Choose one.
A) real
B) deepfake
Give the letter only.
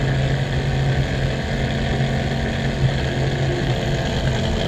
A